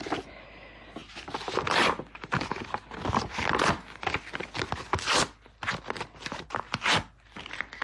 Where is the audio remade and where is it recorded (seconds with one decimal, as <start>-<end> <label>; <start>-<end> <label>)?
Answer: 0.0-7.8 recorded